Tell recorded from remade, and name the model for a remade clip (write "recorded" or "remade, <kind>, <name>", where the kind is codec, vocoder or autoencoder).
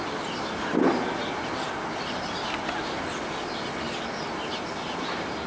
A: recorded